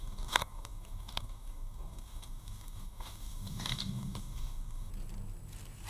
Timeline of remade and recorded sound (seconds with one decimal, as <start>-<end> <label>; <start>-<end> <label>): 0.0-4.9 remade; 4.9-5.9 recorded